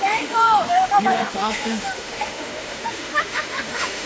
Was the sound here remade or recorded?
remade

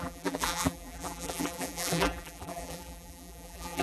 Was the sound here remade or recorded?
remade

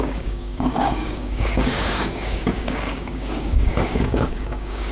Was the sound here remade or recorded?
remade